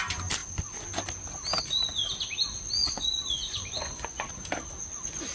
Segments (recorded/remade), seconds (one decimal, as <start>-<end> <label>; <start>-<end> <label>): 0.0-2.8 recorded; 2.8-4.3 remade; 4.3-5.3 recorded